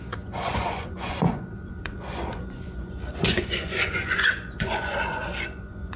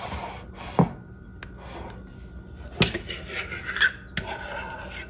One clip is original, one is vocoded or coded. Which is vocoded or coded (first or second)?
first